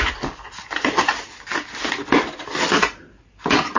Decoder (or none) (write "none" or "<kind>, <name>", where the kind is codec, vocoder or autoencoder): none